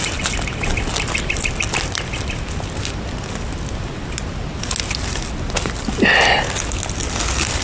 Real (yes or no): yes